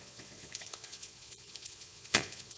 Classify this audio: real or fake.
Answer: fake